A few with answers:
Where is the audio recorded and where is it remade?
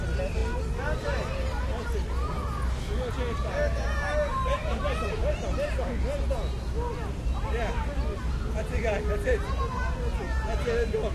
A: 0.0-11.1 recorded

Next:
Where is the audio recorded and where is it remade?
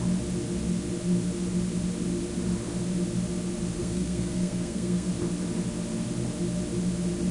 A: 0.0-3.8 recorded; 3.8-5.1 remade; 5.1-7.3 recorded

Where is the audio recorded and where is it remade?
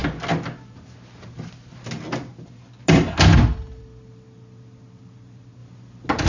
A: 0.0-6.3 recorded